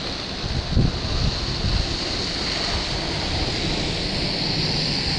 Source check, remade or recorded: recorded